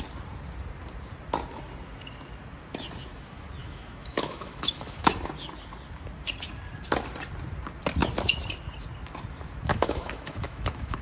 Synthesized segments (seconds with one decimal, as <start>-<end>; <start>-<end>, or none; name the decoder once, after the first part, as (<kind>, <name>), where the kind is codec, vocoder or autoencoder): 3.6-5.1 (autoencoder, DAC-VAE); 9.7-11.0